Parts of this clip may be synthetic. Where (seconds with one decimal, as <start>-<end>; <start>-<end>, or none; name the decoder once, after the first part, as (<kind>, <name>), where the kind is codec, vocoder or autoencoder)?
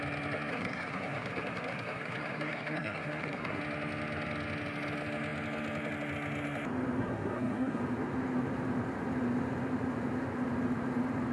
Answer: 0.5-3.6 (codec, SNAC); 7.0-7.8